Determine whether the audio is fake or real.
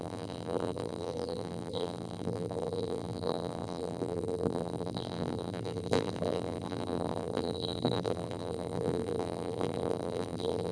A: fake